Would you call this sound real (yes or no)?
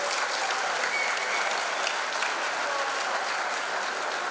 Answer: yes